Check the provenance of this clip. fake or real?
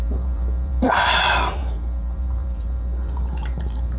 fake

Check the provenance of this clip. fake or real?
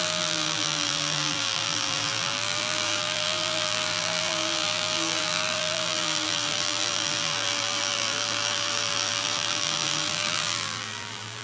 fake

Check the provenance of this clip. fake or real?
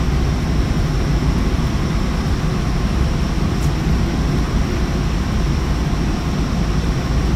real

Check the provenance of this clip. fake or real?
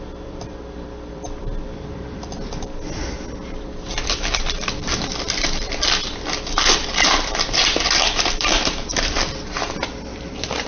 fake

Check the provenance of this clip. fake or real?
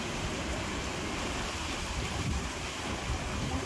real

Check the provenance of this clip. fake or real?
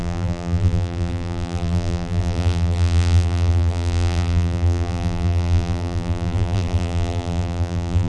fake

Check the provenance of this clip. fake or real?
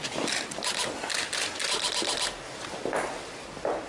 real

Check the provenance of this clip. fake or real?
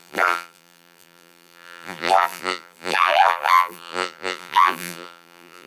fake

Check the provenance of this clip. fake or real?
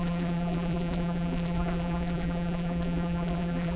fake